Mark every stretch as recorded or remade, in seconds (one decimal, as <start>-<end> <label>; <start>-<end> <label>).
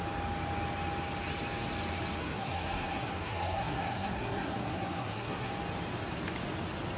0.0-2.2 recorded; 2.2-5.5 remade; 5.5-7.0 recorded